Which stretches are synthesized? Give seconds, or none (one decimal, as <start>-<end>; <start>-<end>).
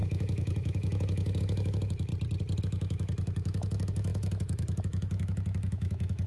0.0-2.1; 2.6-6.3